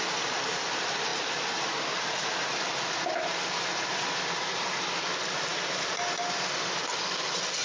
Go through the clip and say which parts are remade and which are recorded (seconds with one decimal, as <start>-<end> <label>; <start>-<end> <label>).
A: 0.0-7.6 recorded